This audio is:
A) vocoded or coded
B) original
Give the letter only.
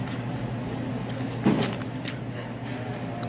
B